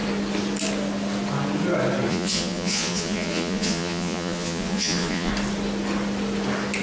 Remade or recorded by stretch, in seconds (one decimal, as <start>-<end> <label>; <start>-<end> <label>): 0.0-2.1 recorded; 2.1-5.3 remade; 5.3-6.8 recorded